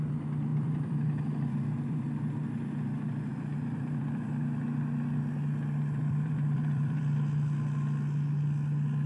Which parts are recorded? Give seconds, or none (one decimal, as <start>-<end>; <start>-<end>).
0.0-0.5; 2.1-3.3; 4.3-6.0; 7.0-9.1

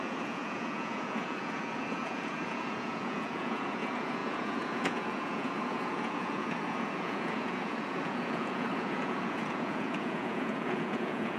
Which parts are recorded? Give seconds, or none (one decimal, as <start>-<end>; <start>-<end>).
none

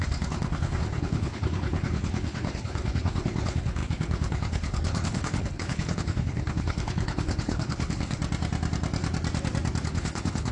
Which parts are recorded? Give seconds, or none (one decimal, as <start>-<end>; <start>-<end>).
8.2-9.8

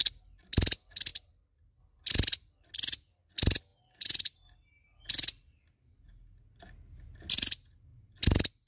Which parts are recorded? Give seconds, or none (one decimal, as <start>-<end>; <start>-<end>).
0.0-8.7

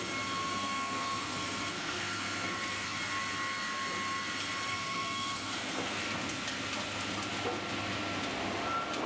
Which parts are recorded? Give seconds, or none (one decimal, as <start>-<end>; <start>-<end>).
0.0-0.4; 3.0-4.7; 6.0-9.1